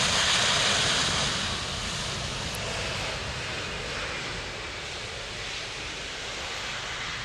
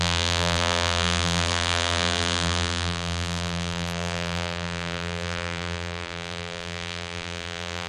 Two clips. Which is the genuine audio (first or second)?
first